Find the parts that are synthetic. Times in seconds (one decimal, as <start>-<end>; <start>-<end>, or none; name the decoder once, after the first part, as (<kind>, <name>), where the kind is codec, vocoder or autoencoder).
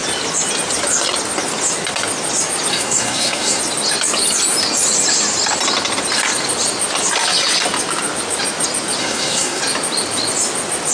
2.7-3.6 (codec, SNAC); 9.0-9.6